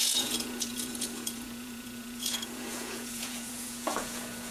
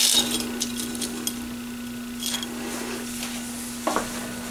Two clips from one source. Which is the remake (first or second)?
first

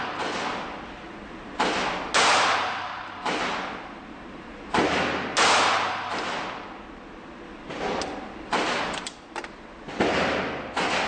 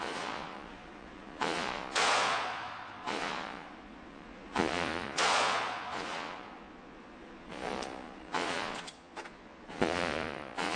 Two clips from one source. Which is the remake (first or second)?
second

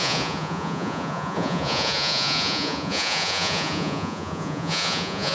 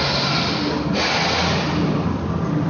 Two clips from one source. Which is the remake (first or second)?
first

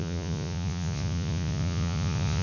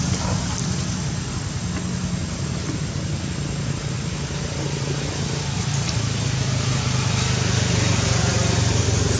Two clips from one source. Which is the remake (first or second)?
first